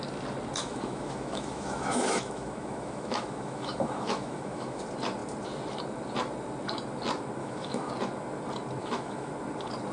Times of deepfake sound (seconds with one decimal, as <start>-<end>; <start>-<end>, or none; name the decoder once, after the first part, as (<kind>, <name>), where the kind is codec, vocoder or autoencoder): 0.6-4.8 (autoencoder, DAC-VAE); 7.4-7.9; 8.8-9.3